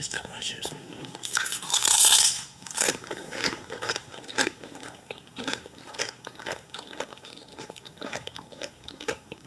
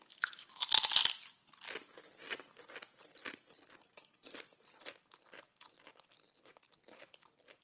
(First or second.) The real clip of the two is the second